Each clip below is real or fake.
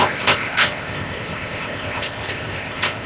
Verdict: fake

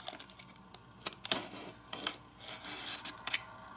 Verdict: real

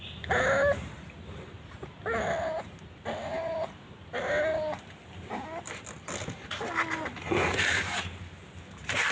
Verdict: real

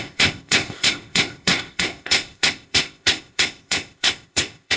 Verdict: fake